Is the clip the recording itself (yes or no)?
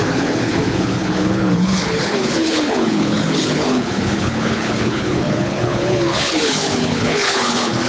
no